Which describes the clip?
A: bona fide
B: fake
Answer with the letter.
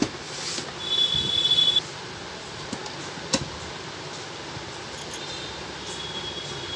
A